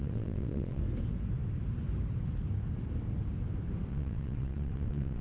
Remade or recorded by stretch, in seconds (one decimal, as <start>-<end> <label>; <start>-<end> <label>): 0.0-0.8 remade; 0.8-3.9 recorded; 3.9-5.2 remade